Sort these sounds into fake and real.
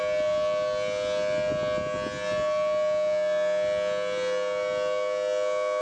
real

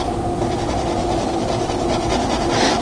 real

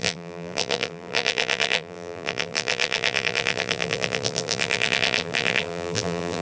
fake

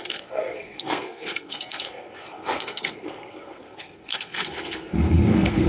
fake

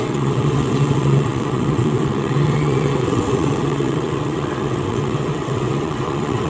fake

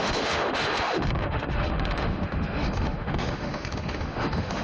fake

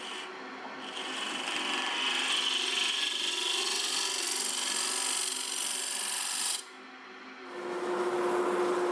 real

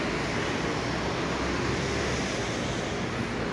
real